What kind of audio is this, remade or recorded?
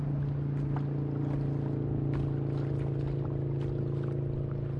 recorded